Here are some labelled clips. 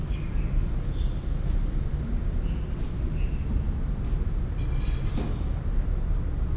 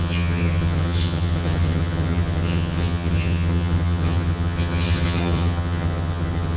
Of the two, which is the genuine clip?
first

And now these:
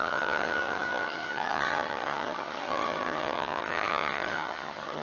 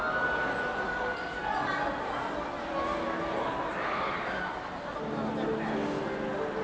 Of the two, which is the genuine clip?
second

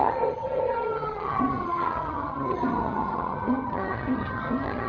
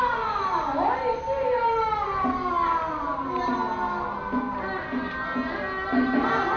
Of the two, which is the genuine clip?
second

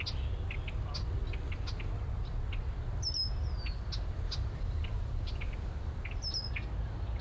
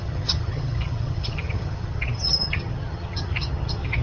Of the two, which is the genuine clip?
first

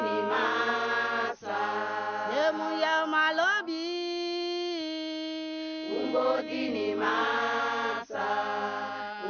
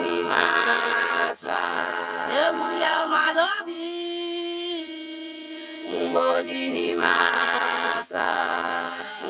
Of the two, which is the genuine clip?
first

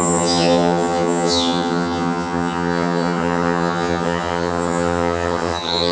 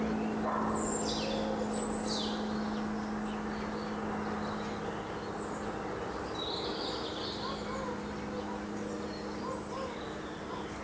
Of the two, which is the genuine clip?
second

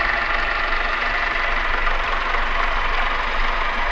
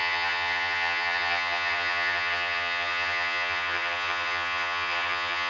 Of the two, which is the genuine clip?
first